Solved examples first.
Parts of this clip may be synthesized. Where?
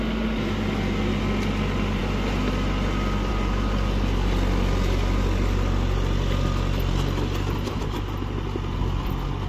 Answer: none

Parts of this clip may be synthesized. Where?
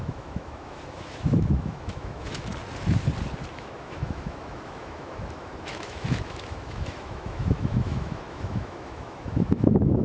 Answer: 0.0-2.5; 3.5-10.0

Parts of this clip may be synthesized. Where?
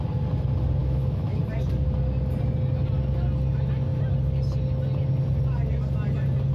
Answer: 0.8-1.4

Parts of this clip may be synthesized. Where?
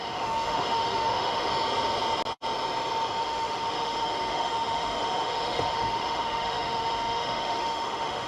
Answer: 0.0-1.5; 3.2-8.3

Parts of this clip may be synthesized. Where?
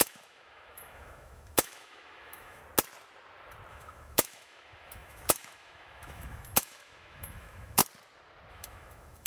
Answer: 0.0-2.6; 3.7-7.8; 8.5-9.3